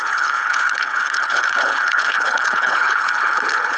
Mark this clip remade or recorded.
remade